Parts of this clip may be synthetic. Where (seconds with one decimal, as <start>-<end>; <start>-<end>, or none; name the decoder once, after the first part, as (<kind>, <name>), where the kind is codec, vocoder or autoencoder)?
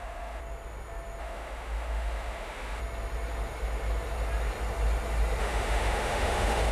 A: 0.0-0.4 (autoencoder, DAC-VAE); 1.2-2.8; 5.4-6.7